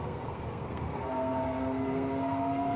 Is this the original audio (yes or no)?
no